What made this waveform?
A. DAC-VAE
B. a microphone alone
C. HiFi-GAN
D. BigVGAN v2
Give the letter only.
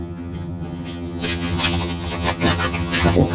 C